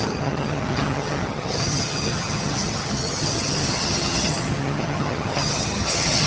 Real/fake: fake